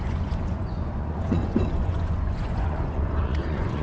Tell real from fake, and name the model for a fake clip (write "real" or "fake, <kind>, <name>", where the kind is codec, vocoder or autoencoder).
fake, vocoder, Vocos